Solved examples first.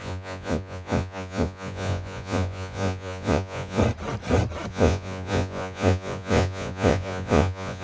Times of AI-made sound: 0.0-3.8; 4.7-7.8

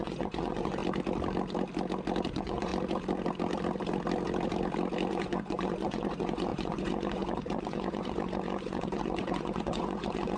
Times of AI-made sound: 0.0-0.8; 2.3-2.7; 5.1-10.4

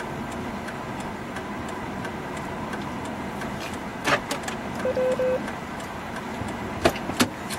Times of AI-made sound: none

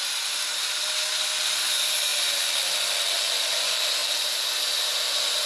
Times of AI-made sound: none

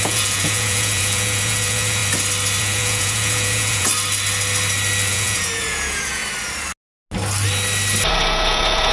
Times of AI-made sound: 0.0-2.0; 2.6-3.9; 5.1-6.2; 8.1-8.9

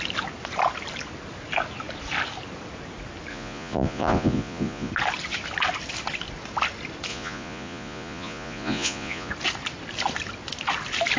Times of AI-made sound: 3.3-4.9; 7.1-9.3

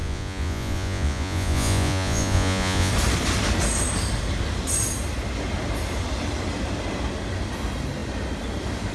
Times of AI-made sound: 0.0-2.9